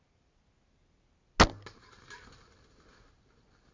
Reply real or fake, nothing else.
real